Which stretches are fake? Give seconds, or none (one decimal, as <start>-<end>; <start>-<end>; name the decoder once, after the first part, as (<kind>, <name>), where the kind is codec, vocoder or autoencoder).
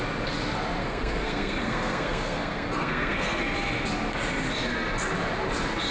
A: 0.8-3.4 (codec, SNAC)